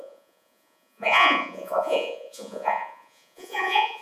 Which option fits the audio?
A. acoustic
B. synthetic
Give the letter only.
B